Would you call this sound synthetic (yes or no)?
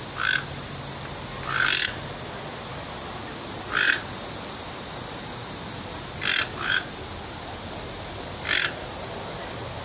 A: no